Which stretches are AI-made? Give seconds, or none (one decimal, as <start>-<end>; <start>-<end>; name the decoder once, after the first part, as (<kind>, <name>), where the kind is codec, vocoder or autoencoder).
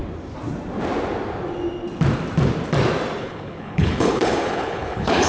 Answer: 3.2-5.3 (codec, HILCodec)